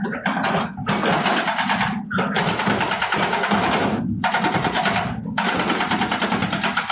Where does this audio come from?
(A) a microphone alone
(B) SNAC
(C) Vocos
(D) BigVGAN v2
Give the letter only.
D